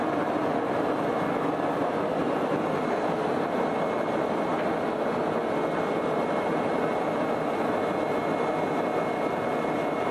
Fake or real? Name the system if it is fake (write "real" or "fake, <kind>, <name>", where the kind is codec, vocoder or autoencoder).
real